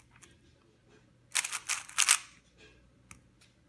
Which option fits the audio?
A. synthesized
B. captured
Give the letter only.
B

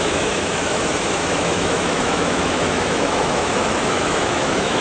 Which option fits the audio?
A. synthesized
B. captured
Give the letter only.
A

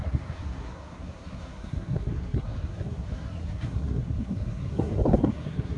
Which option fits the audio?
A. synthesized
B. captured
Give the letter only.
A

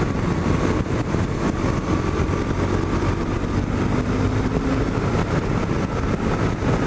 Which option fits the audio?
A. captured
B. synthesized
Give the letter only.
A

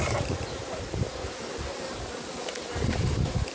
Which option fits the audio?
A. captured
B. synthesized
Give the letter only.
A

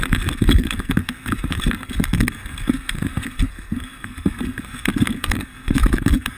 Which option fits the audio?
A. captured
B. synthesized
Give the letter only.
B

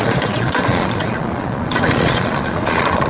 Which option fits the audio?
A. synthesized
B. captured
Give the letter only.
A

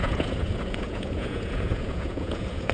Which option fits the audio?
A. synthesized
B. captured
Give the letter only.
A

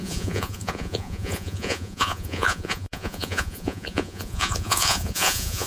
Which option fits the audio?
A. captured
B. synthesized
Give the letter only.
B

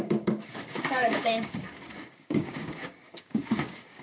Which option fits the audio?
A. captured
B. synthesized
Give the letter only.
B